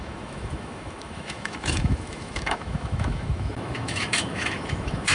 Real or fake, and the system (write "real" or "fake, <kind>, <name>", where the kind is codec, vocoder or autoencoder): fake, autoencoder, DAC-VAE